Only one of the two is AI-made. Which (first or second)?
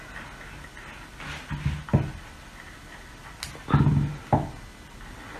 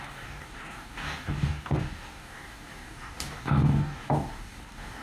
second